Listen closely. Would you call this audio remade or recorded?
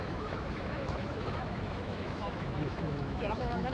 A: remade